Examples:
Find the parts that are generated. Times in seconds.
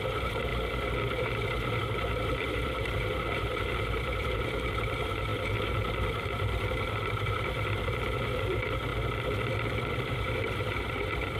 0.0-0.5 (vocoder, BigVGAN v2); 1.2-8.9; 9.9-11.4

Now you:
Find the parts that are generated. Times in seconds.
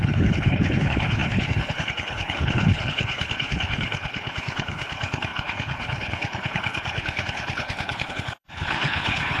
0.0-9.4 (codec, HILCodec)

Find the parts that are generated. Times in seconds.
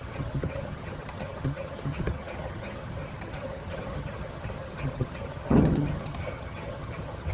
0.0-7.3 (vocoder, HiFi-GAN)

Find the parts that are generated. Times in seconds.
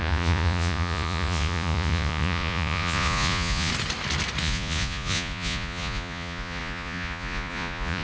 0.0-3.7 (vocoder, Vocos); 4.4-8.0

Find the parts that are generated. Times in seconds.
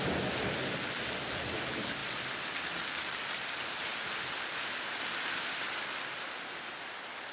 none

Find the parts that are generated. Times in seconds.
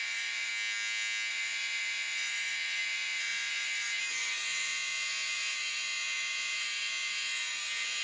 0.0-0.5 (vocoder, Vocos); 1.3-8.0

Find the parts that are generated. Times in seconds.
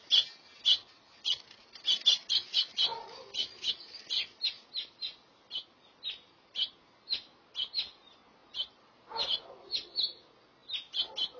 2.9-3.7 (vocoder, BigVGAN v2)